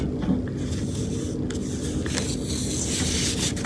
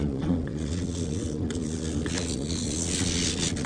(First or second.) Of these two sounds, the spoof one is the second